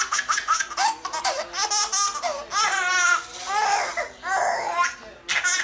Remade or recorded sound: recorded